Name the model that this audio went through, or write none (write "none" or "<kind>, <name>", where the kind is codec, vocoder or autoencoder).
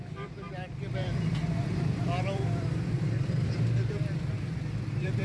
vocoder, BigVGAN v2